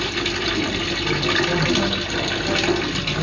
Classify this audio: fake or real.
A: real